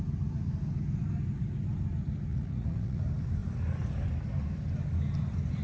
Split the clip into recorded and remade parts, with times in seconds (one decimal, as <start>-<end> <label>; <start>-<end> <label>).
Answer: 0.0-2.3 recorded; 2.3-3.0 remade; 3.0-5.6 recorded